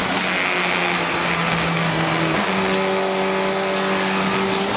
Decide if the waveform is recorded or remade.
recorded